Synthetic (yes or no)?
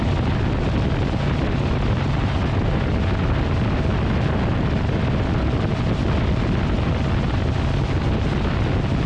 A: no